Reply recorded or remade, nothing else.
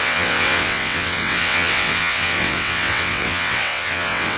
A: remade